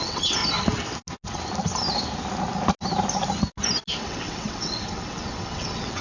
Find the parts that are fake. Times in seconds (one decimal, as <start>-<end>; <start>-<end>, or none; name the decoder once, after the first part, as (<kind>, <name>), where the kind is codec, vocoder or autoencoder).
0.0-0.4 (vocoder, WaveNeXt); 4.0-6.0